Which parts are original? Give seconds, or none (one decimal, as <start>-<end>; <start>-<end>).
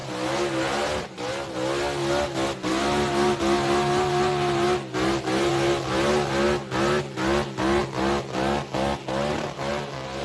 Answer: 0.0-10.2